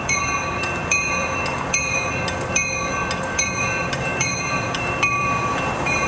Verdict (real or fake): fake